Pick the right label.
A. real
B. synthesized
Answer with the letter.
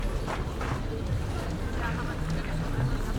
A